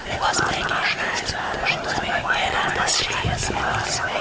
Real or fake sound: real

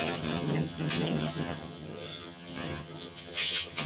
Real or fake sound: fake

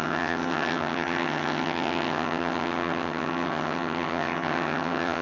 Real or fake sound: fake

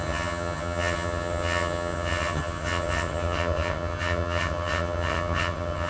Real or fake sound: fake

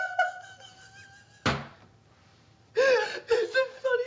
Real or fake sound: real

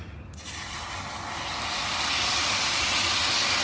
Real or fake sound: real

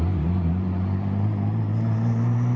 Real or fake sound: real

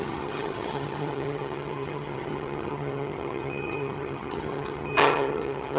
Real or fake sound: fake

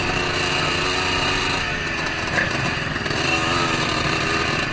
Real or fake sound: real